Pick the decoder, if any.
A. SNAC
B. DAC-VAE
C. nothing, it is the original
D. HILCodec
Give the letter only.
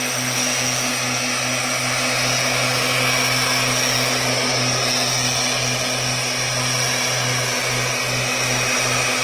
C